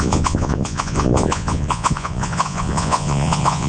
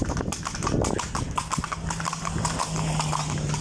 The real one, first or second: second